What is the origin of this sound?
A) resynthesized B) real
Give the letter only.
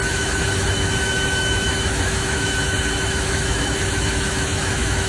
A